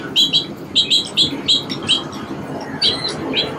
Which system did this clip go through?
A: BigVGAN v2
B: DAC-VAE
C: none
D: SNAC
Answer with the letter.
C